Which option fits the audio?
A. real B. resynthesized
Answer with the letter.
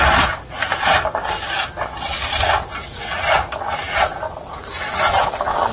A